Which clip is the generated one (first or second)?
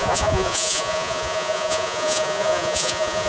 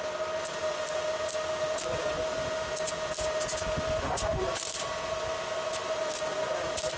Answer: first